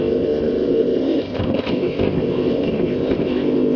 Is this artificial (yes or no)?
yes